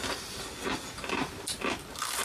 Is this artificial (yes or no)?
no